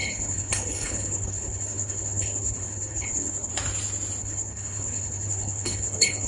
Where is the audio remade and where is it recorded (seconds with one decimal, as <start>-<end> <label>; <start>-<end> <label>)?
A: 0.0-3.5 remade; 3.5-4.2 recorded; 4.2-6.3 remade